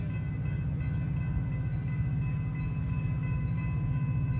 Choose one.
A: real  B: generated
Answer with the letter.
A